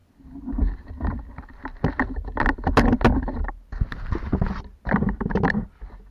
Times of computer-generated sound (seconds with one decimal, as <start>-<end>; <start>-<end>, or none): none